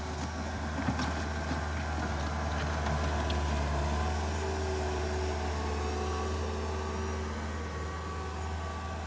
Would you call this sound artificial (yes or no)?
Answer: no